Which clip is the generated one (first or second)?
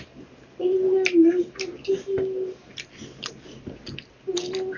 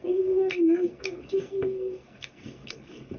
second